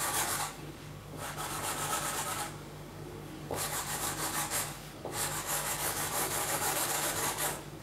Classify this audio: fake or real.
fake